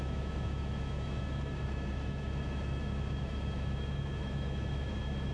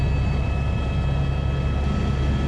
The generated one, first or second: first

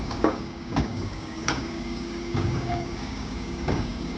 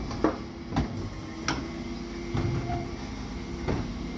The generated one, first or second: first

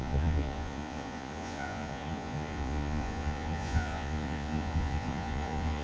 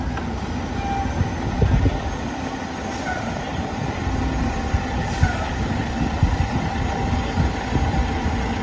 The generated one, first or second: first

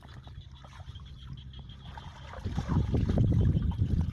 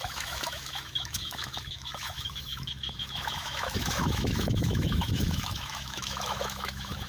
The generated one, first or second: second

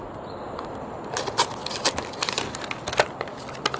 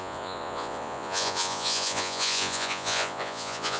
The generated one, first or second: second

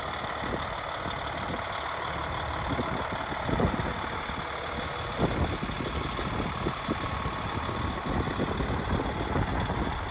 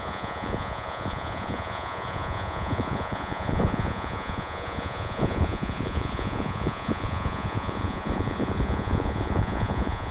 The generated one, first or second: second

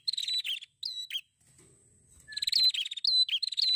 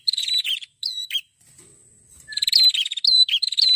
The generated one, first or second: second